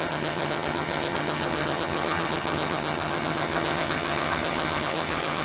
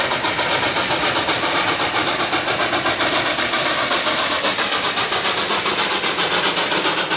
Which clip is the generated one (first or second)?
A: first